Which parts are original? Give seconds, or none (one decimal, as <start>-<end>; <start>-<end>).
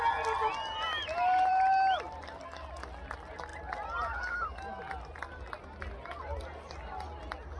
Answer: 0.0-7.6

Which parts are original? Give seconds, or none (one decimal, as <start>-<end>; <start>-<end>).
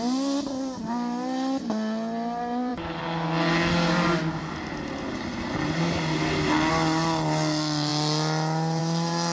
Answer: 0.0-9.3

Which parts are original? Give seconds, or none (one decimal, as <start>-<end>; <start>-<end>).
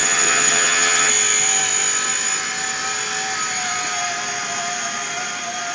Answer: 1.1-5.7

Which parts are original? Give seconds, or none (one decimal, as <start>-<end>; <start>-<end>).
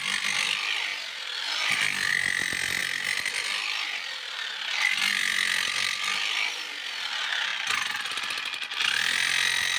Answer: 0.0-9.8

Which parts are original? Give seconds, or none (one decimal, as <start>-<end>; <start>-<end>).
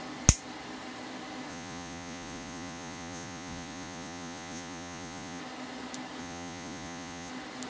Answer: 0.0-1.5; 5.4-6.2; 7.3-7.7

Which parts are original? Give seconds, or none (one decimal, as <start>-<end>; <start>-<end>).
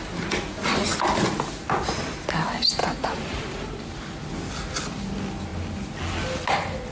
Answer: 0.0-2.8; 4.3-6.9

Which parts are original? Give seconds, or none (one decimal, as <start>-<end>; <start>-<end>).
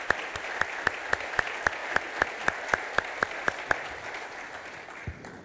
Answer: 0.0-5.4